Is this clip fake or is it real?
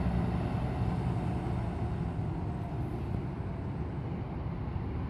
real